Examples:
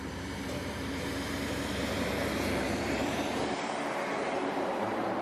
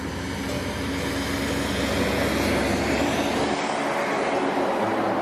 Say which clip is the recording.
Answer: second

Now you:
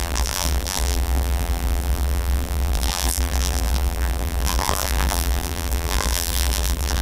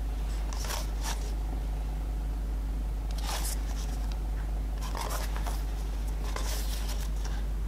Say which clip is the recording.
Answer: second